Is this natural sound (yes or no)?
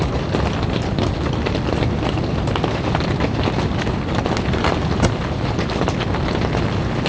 yes